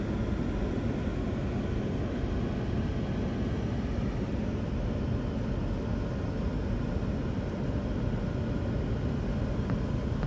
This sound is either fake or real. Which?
real